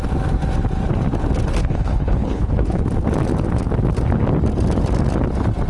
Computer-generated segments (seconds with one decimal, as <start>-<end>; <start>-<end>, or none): 1.6-2.8

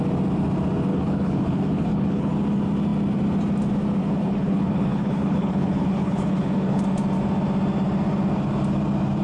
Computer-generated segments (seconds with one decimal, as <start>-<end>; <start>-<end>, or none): 0.9-2.3; 4.0-6.8

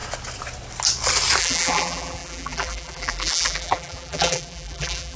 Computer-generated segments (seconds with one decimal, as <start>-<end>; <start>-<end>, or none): 1.4-5.2

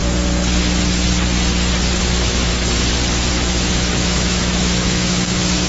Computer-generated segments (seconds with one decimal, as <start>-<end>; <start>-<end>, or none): 2.0-2.5; 3.3-5.7